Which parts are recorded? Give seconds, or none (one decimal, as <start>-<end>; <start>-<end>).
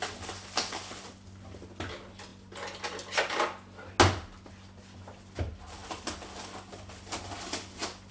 0.0-8.1